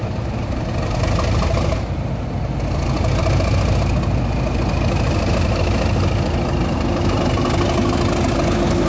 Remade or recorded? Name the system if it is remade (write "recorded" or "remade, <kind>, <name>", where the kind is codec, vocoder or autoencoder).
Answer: recorded